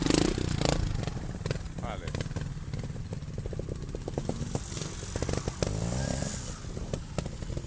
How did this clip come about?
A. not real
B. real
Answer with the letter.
B